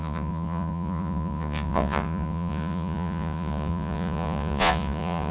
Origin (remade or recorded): remade